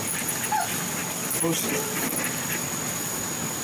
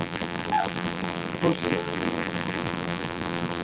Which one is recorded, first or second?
first